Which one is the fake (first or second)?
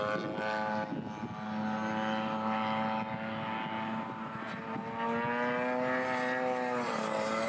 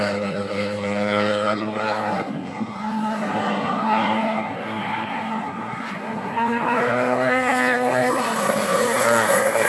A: second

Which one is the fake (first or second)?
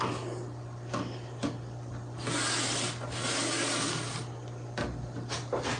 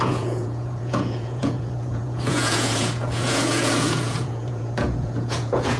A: second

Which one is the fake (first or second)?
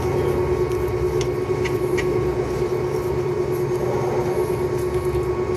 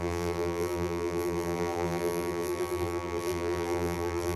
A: second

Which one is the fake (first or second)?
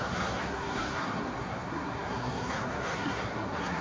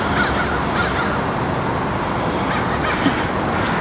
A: first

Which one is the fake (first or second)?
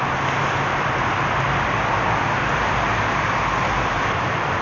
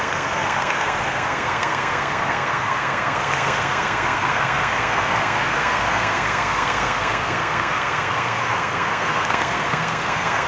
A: second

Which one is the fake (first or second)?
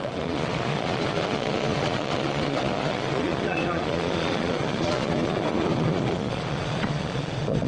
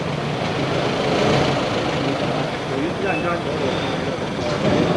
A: first